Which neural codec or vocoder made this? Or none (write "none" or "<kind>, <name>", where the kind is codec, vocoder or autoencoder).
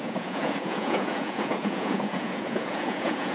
vocoder, Vocos